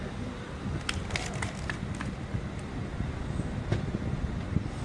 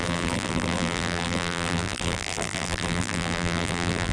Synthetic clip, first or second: second